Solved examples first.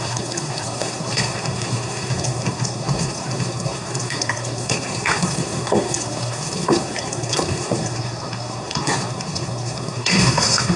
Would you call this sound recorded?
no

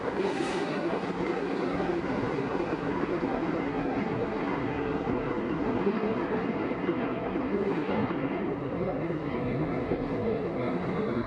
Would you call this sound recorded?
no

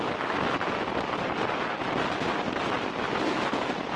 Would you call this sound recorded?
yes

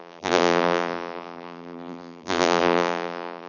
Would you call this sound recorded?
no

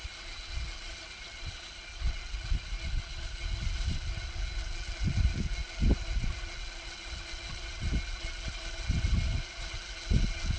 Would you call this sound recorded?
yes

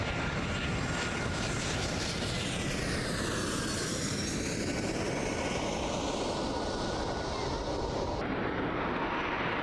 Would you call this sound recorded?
yes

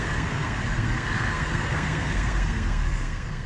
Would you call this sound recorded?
no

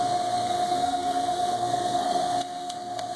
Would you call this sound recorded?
no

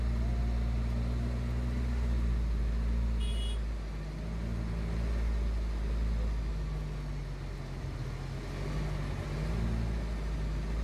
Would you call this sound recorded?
yes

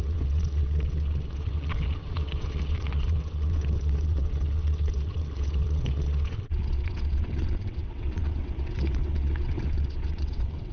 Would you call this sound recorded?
no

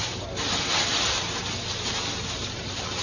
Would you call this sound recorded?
yes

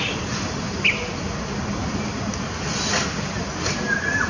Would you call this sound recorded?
yes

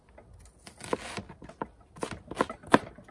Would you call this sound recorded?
yes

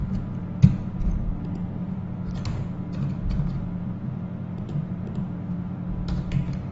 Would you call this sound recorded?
yes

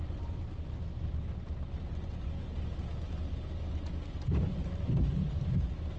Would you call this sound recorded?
yes